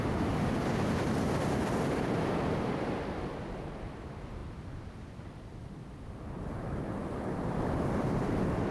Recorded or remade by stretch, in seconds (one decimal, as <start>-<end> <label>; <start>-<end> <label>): 0.0-7.0 recorded; 7.0-8.7 remade